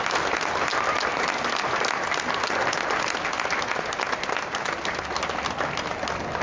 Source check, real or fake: real